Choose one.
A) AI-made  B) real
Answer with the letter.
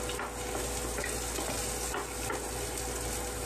B